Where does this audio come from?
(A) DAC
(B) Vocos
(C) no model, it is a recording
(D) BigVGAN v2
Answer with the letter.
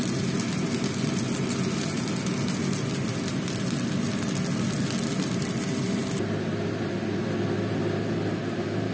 C